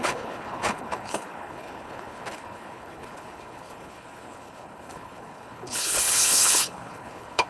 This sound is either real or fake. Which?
fake